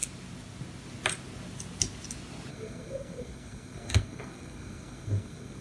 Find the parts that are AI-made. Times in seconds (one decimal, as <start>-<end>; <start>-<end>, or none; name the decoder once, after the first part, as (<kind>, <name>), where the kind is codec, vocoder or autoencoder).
2.5-5.6 (codec, SNAC)